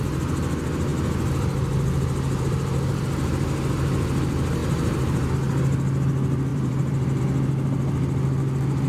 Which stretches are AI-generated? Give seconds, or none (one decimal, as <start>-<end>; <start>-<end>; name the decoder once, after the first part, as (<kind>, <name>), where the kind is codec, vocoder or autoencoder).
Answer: 4.6-5.3 (vocoder, BigVGAN v2); 6.5-7.2